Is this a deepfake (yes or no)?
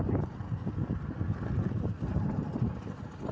no